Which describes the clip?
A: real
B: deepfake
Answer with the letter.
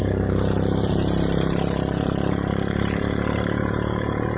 B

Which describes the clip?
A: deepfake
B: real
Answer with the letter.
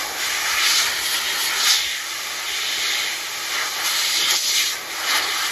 B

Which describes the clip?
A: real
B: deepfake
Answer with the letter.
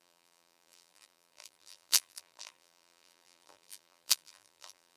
B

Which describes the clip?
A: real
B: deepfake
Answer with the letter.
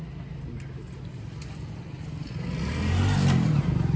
A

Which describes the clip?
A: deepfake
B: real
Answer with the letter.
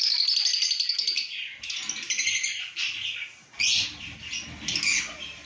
B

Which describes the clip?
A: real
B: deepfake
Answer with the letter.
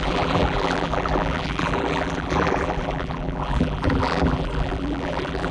B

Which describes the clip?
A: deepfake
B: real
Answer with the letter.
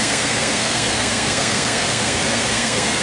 A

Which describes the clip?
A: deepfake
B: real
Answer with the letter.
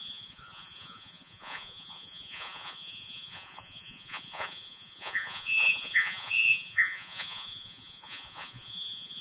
A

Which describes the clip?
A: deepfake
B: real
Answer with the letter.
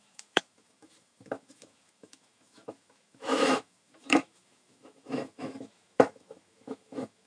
A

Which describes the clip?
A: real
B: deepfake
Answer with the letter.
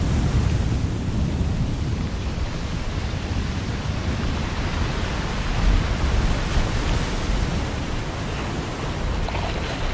A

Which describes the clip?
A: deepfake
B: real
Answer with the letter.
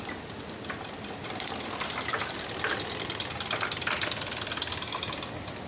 B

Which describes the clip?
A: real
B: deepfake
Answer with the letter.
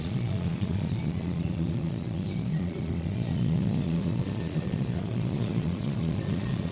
B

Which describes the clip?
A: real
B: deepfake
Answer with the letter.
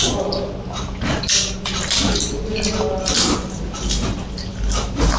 A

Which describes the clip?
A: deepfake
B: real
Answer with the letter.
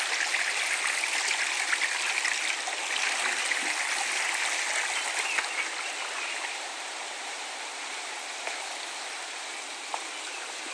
B